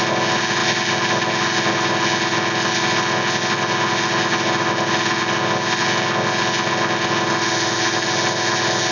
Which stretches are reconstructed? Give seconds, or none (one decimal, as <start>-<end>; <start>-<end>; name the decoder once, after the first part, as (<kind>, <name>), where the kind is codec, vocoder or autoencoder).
none